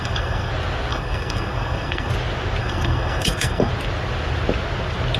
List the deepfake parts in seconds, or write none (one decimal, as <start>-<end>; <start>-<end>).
0.0-0.5; 0.9-2.1; 2.6-3.7